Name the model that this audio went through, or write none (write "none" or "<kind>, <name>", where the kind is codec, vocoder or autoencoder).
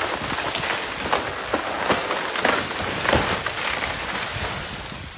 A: none